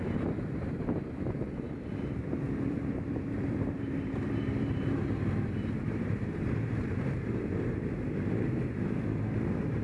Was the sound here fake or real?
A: fake